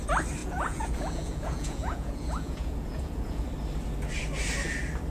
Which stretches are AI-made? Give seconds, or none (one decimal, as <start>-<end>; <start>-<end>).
0.4-3.5